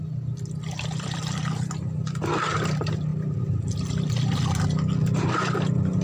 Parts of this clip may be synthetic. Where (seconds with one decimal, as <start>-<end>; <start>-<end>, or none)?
none